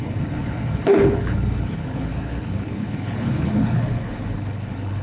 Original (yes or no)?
no